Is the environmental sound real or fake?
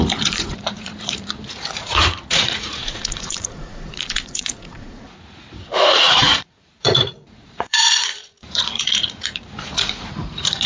fake